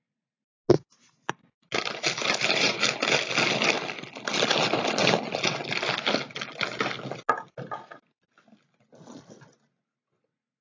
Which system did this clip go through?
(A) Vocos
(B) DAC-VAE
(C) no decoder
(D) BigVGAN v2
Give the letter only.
C